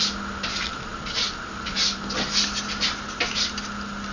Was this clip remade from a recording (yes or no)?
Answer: no